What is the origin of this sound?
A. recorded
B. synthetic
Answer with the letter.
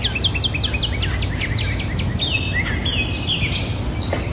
A